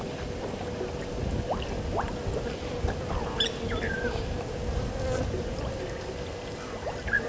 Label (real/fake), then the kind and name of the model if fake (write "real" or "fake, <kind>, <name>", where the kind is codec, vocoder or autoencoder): real